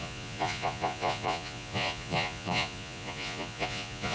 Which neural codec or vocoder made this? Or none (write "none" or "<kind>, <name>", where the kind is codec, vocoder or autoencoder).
vocoder, Vocos